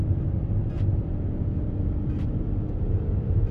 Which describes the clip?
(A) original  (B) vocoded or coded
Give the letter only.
B